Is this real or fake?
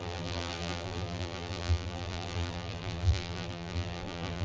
fake